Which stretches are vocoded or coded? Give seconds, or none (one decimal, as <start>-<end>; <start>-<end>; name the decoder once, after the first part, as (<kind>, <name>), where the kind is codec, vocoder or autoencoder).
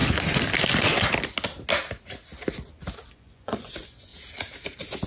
3.1-4.1 (vocoder, Vocos)